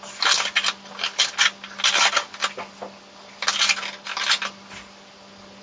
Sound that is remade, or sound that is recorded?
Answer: recorded